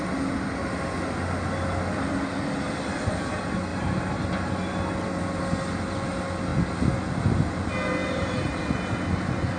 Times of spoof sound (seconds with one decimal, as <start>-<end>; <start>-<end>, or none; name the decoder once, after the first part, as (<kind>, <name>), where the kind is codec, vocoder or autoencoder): 3.7-4.2 (vocoder, BigVGAN v2); 8.0-8.6

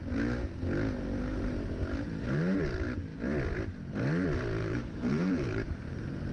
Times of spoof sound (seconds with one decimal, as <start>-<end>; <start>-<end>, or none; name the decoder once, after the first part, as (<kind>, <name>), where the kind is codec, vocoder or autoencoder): 4.6-6.3 (vocoder, BigVGAN v2)